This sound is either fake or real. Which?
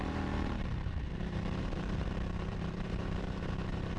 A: fake